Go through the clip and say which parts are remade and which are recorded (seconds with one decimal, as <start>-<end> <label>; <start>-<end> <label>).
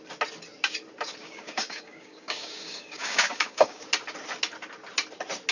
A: 0.0-1.2 recorded; 1.2-3.8 remade; 3.8-5.5 recorded